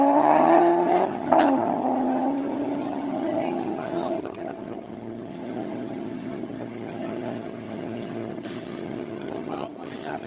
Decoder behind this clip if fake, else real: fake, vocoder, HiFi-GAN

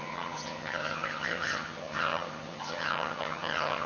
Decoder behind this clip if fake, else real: fake, vocoder, HiFi-GAN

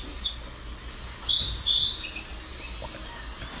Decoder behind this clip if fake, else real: real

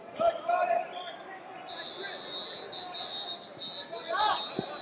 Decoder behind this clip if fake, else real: real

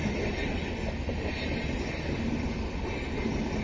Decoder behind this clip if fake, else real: real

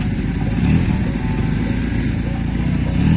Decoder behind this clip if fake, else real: real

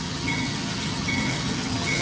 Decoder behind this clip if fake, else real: fake, vocoder, HiFi-GAN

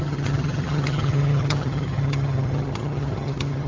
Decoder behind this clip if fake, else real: fake, vocoder, HiFi-GAN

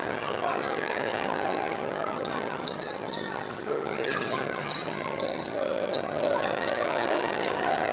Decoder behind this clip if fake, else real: fake, vocoder, HiFi-GAN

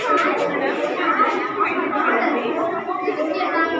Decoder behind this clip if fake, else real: real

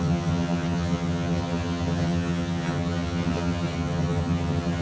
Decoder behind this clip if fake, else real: fake, vocoder, HiFi-GAN